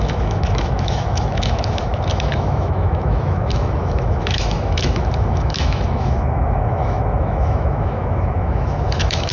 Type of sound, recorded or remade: remade